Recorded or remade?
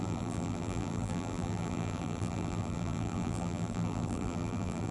remade